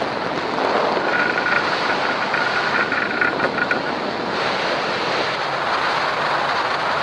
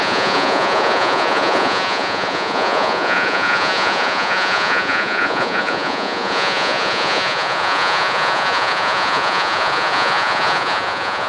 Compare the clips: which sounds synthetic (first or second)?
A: second